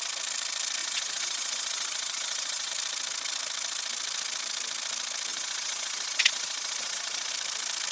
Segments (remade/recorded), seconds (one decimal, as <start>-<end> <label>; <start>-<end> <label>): 0.0-0.8 recorded; 0.8-2.7 remade; 2.7-5.3 recorded; 5.3-7.3 remade; 7.3-7.9 recorded